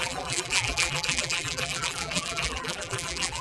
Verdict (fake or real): fake